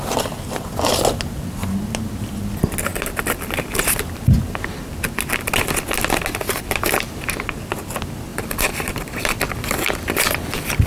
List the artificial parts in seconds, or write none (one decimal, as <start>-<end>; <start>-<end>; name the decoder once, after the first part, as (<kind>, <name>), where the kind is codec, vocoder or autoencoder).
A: 8.3-10.9 (vocoder, BigVGAN v2)